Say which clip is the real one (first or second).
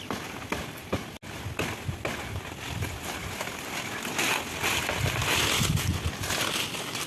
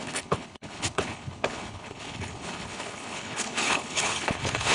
first